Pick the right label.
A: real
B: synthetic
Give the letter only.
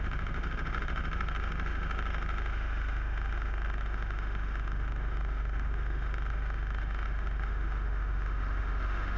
B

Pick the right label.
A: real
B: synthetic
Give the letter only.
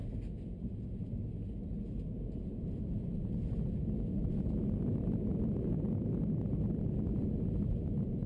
A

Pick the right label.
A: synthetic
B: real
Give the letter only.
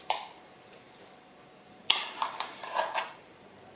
A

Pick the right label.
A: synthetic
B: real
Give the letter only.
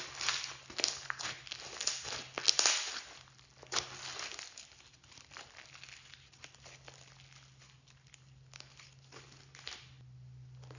B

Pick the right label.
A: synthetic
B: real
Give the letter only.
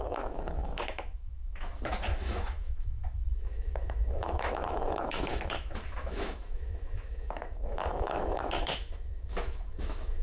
A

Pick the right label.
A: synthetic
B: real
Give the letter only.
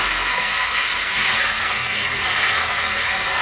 A